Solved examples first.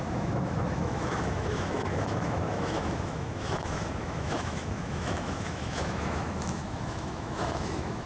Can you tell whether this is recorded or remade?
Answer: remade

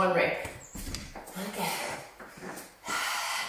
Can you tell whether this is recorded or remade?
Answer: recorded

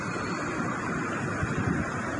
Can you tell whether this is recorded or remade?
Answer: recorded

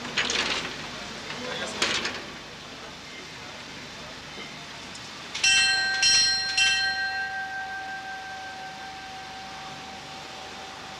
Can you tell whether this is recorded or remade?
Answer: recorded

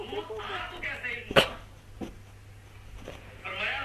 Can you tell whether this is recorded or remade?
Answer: recorded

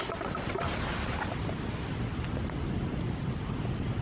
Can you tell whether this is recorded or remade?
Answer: recorded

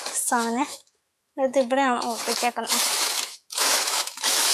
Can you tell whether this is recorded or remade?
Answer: remade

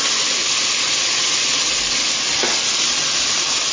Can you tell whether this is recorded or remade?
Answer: recorded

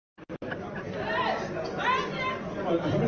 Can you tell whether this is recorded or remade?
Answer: recorded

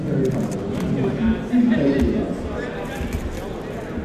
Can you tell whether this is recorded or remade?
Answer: recorded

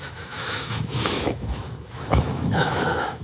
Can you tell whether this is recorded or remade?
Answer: remade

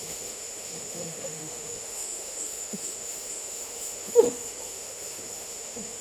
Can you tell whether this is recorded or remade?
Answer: remade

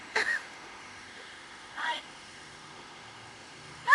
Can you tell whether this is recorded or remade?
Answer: remade